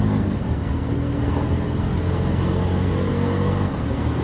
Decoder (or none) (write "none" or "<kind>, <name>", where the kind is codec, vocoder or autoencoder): codec, SNAC